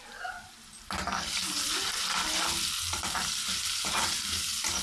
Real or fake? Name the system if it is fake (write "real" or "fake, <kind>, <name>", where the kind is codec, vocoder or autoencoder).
real